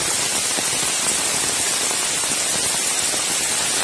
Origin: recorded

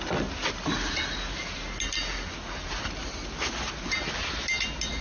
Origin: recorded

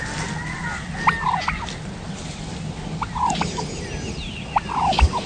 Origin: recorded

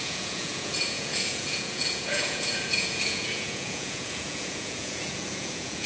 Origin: remade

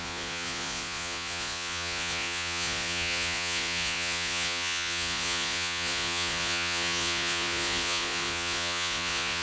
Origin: remade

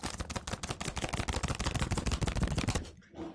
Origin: recorded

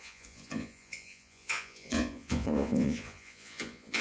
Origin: remade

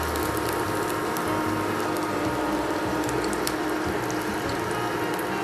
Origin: recorded